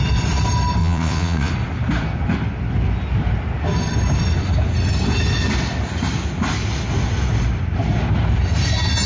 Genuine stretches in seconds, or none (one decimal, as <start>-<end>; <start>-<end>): 0.0-0.8; 1.5-9.1

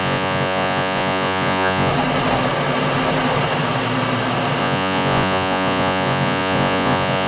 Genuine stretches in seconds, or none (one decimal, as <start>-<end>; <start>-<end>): 1.9-4.6

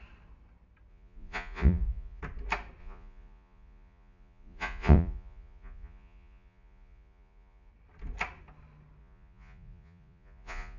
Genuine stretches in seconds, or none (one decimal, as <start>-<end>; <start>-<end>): 0.0-0.9; 2.2-2.8; 7.7-9.0

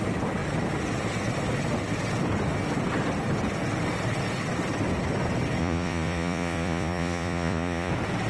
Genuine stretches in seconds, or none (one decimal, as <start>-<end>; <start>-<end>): 0.0-5.6; 7.9-8.3

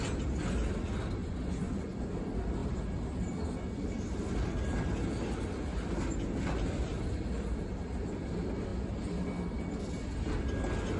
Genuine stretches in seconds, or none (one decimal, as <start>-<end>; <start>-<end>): 0.0-1.2; 2.1-11.0

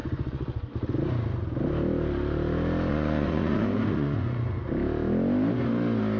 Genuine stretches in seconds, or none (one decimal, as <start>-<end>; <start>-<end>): 0.6-2.9; 4.7-6.2

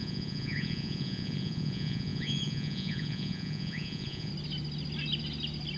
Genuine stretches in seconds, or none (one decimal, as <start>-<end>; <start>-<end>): 4.3-5.8